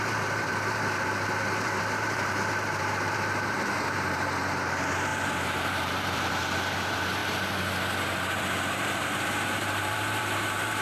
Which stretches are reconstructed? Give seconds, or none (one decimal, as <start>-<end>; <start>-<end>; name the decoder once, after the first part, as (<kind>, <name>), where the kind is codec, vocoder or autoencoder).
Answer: 0.0-7.2 (vocoder, BigVGAN v2); 8.4-10.8